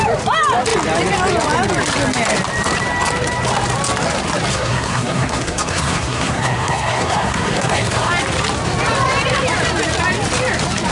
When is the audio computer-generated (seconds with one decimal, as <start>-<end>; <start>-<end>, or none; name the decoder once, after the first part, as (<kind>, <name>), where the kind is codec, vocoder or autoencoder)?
4.5-8.1 (codec, SNAC)